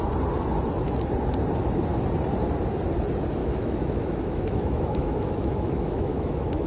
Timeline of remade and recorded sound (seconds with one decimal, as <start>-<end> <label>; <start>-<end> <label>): 0.0-3.4 recorded; 3.4-6.7 remade